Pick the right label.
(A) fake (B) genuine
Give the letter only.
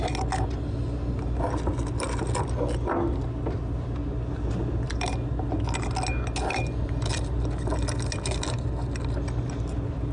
B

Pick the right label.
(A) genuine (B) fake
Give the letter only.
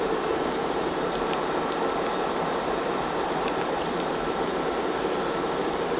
B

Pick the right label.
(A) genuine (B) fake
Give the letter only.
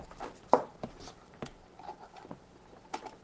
B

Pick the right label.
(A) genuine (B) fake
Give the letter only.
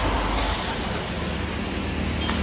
A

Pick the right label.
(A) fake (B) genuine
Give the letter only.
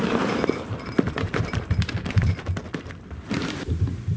A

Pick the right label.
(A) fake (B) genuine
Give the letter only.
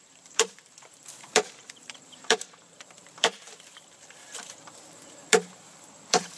A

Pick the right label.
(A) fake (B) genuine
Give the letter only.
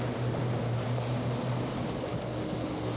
B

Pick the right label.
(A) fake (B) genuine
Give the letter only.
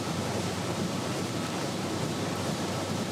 A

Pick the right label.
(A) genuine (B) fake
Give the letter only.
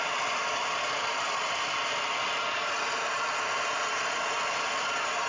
B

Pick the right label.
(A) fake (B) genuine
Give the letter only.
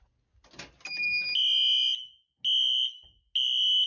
B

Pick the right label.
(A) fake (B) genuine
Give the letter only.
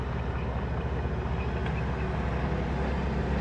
B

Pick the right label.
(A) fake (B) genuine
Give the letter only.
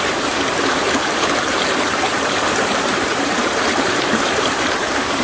A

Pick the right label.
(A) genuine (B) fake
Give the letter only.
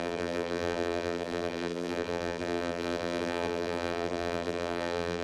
B